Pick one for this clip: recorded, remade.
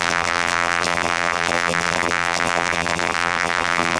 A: remade